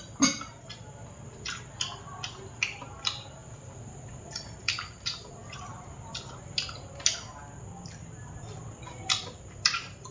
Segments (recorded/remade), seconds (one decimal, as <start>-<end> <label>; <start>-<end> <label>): 0.0-3.4 recorded; 3.4-5.9 remade; 5.9-10.1 recorded